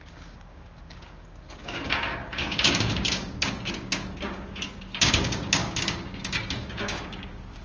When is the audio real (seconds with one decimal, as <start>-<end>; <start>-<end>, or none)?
none